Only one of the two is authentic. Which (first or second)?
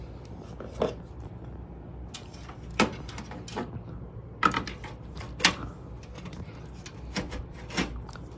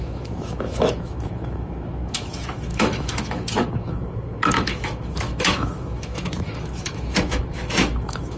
first